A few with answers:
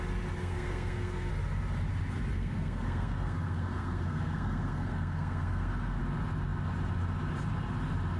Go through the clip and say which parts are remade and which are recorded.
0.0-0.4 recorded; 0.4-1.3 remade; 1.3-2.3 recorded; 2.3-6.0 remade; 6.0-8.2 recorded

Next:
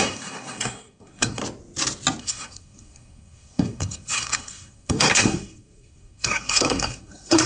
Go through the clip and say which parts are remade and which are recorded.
0.0-1.4 remade; 1.4-2.2 recorded; 2.2-7.5 remade

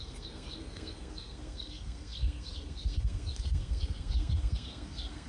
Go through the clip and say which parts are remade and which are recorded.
0.0-5.3 remade

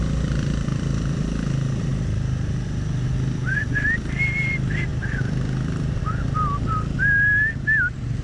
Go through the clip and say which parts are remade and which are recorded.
0.0-8.2 recorded